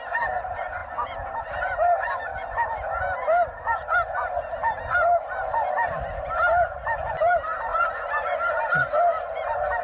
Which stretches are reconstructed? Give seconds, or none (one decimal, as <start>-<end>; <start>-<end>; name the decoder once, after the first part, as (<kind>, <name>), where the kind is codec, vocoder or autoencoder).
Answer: 0.0-9.8 (vocoder, BigVGAN v2)